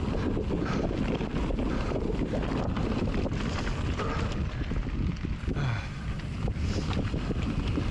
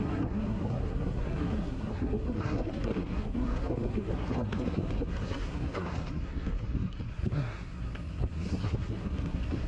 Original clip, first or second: first